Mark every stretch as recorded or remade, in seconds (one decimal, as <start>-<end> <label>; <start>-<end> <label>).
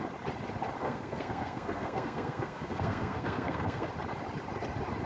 0.0-0.8 recorded; 0.8-3.9 remade; 3.9-5.1 recorded